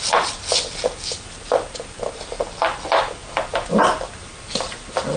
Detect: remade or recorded recorded